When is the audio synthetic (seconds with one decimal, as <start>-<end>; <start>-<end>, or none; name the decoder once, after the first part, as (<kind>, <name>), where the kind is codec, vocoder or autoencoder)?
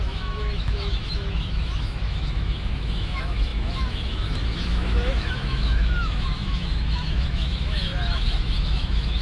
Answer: 0.0-9.2 (autoencoder, DAC-VAE)